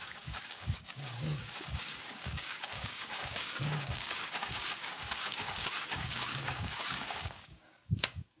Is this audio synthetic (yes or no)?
yes